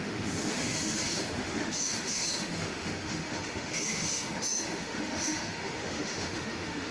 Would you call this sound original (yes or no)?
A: no